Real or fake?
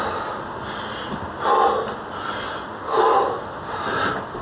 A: real